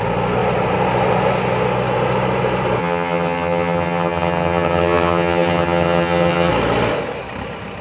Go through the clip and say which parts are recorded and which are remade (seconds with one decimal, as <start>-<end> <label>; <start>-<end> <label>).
0.0-2.8 recorded; 2.8-6.5 remade; 6.5-7.8 recorded